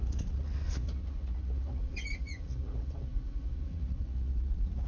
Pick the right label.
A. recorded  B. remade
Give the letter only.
B